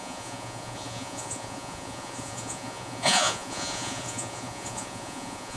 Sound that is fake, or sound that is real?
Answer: fake